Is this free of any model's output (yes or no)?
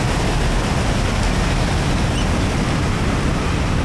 yes